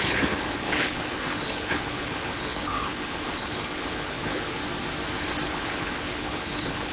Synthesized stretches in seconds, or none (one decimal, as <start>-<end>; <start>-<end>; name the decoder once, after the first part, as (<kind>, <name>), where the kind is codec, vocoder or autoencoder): 0.0-4.6 (codec, HILCodec); 5.5-6.9